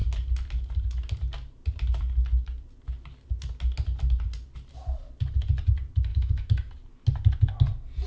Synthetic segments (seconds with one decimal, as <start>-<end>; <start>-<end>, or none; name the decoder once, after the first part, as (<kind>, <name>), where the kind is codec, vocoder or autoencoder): 6.1-6.7 (autoencoder, DAC-VAE)